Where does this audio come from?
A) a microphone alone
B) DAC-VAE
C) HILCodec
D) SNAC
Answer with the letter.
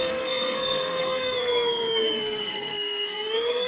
D